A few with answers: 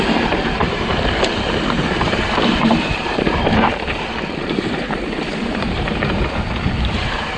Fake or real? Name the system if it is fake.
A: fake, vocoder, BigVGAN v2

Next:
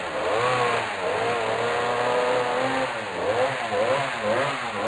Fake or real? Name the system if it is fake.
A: real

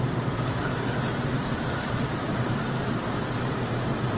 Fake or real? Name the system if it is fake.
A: fake, vocoder, BigVGAN v2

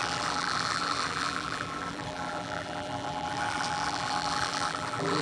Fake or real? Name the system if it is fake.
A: fake, vocoder, BigVGAN v2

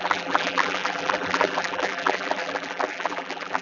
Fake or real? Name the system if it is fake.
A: fake, vocoder, BigVGAN v2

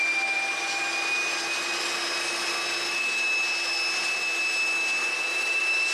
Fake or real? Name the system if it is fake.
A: real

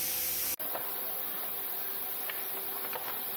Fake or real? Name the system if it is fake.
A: real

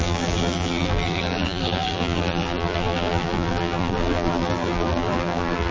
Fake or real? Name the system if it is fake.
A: fake, vocoder, BigVGAN v2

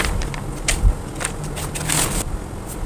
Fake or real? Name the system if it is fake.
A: real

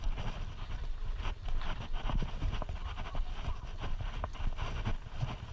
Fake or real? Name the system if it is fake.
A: real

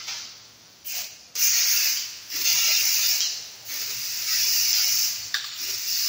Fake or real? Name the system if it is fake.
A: fake, vocoder, BigVGAN v2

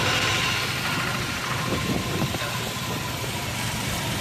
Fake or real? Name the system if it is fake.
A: real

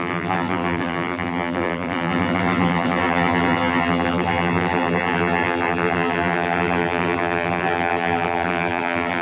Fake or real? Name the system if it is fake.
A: fake, vocoder, BigVGAN v2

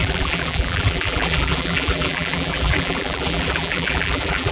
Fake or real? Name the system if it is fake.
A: fake, vocoder, BigVGAN v2